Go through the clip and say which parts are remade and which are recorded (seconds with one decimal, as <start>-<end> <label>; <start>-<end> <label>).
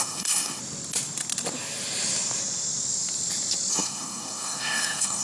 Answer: 0.0-0.6 remade; 0.6-3.7 recorded; 3.7-5.2 remade